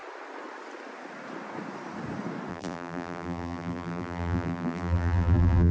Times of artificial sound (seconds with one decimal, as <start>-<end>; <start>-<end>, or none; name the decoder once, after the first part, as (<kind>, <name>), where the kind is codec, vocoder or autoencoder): 2.5-5.7 (vocoder, BigVGAN v2)